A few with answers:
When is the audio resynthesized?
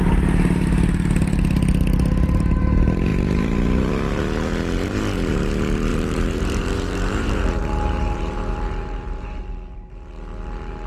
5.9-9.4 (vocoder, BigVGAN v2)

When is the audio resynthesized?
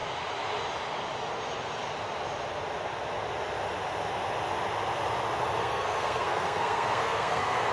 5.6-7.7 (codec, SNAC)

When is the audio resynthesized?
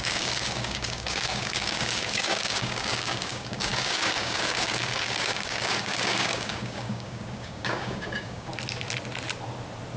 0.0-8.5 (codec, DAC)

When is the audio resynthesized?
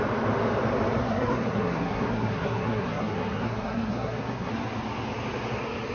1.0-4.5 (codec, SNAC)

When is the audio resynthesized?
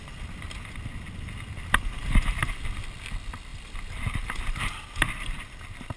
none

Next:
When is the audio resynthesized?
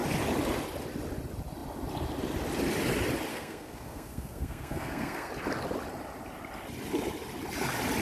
3.3-5.3 (codec, SNAC)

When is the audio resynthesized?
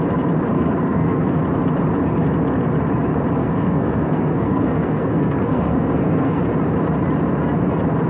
0.5-1.4 (codec, SNAC); 3.4-6.4